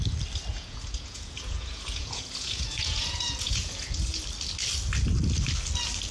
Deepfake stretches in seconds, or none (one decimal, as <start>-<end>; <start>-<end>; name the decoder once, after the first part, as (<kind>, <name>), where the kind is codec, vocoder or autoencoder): 0.5-4.2 (vocoder, Vocos)